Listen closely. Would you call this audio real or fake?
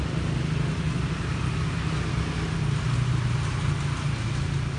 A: real